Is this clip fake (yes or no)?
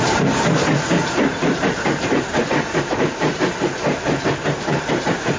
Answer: yes